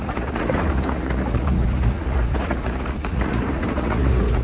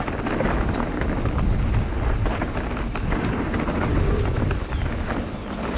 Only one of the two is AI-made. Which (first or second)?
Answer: first